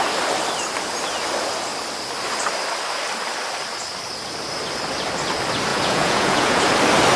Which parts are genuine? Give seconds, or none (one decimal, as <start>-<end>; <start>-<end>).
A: 0.0-5.7; 6.6-7.2